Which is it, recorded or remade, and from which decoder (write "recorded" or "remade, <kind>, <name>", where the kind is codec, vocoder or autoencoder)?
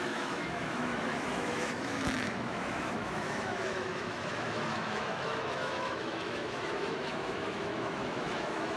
remade, autoencoder, DAC-VAE